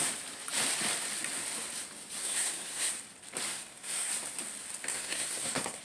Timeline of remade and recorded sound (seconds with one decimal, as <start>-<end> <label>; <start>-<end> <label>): 0.0-2.2 recorded; 2.2-2.9 remade; 2.9-3.5 recorded; 3.5-4.1 remade; 4.1-4.9 recorded; 4.9-5.8 remade